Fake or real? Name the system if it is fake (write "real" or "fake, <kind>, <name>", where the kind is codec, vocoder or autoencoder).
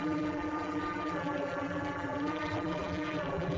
fake, vocoder, BigVGAN v2